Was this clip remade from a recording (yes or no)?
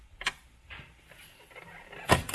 no